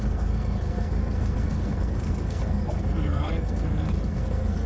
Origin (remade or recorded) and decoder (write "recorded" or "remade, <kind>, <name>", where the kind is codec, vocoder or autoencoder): remade, codec, SNAC